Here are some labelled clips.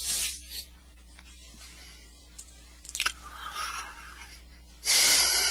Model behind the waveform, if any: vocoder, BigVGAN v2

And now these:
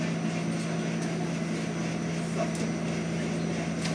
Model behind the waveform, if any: none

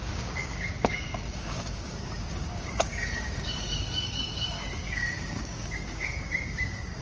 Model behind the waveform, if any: codec, DAC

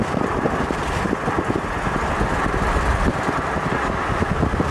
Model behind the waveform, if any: none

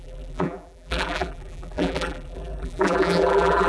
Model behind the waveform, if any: vocoder, BigVGAN v2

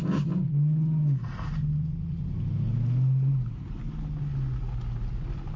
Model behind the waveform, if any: none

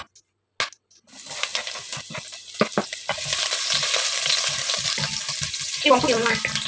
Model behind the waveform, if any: none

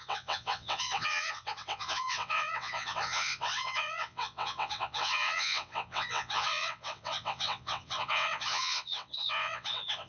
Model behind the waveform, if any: vocoder, WaveNeXt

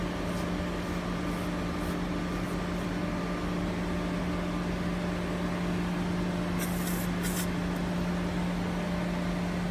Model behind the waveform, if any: none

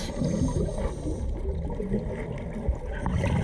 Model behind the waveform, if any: none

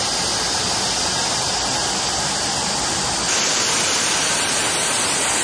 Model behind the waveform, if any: none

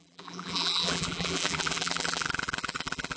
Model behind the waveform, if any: vocoder, BigVGAN v2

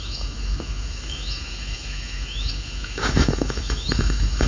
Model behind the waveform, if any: autoencoder, DAC-VAE